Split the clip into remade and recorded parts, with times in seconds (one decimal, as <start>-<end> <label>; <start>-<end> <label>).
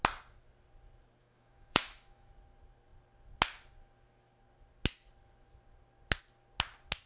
0.0-1.2 recorded; 1.2-2.3 remade; 2.3-7.1 recorded